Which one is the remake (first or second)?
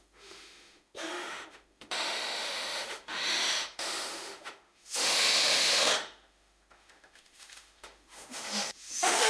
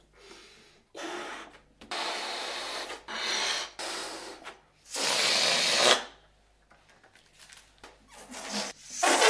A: first